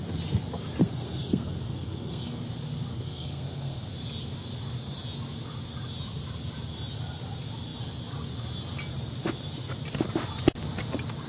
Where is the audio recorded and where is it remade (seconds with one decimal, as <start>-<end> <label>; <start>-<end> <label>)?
0.0-0.8 recorded; 0.8-2.4 remade; 2.4-2.9 recorded; 2.9-3.9 remade; 3.9-11.3 recorded